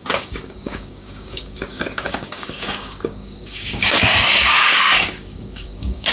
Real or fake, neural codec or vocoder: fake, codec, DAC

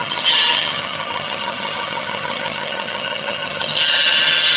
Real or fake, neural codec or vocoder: fake, vocoder, HiFi-GAN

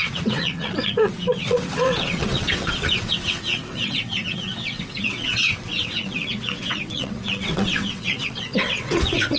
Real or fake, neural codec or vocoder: fake, vocoder, WaveNeXt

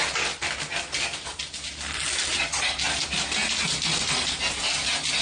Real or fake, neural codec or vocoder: real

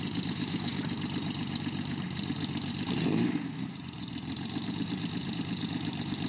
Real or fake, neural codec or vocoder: fake, vocoder, BigVGAN v2